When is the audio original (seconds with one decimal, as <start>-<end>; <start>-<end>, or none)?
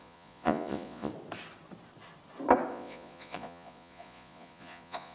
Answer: 1.1-2.7